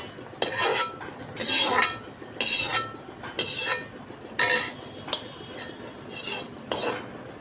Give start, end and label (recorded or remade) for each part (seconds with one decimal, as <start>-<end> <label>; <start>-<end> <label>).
0.0-7.4 recorded